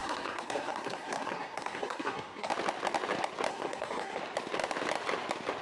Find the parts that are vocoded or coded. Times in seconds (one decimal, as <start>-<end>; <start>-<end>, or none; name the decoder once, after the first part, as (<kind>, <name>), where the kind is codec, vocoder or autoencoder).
0.0-2.5 (codec, SNAC); 3.5-4.2